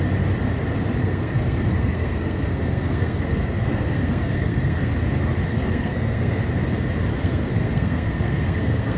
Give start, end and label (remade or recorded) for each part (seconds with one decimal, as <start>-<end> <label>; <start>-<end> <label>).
0.0-1.0 recorded; 1.0-4.9 remade; 4.9-5.5 recorded; 5.5-6.4 remade; 6.4-7.1 recorded; 7.1-9.0 remade